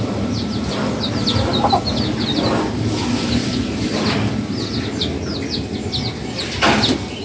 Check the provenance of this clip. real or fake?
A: real